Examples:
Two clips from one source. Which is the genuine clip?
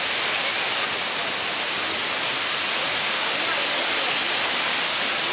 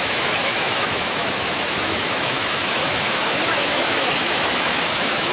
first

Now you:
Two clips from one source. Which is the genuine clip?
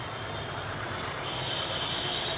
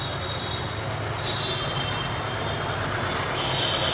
second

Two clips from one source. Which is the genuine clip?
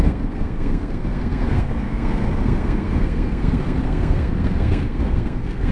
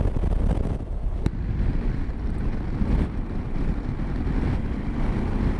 second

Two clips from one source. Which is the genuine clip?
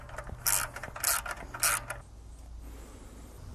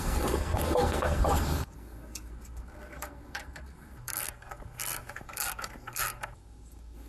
first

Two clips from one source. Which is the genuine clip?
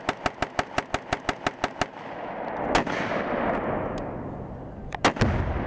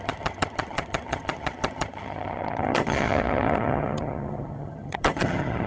first